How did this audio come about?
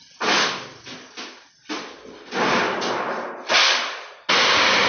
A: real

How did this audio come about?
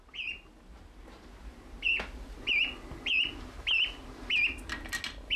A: real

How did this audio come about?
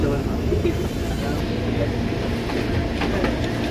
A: real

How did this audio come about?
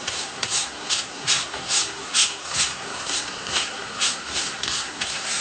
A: fake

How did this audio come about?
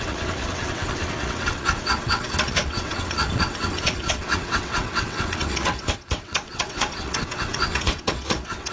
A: fake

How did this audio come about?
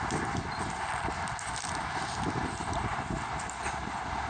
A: real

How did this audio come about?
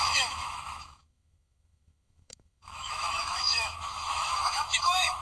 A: fake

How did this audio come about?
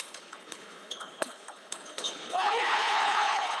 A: fake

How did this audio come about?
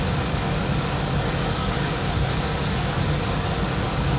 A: fake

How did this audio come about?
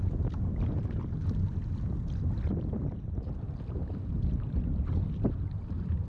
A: real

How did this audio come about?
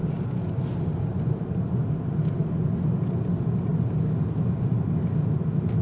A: real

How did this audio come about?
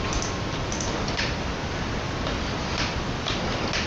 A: fake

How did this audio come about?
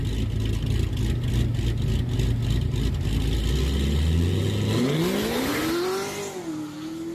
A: real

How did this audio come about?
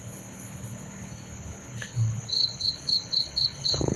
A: fake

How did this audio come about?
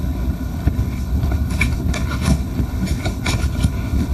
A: fake